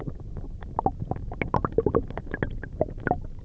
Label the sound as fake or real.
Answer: real